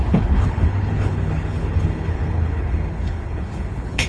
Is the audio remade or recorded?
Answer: remade